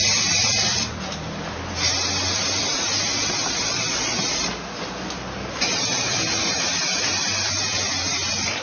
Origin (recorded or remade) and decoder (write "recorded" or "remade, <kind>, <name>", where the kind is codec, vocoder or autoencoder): remade, vocoder, BigVGAN v2